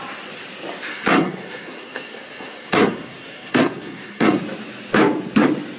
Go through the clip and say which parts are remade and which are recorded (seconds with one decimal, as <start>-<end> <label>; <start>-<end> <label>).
0.0-0.9 recorded; 0.9-4.4 remade; 4.4-5.8 recorded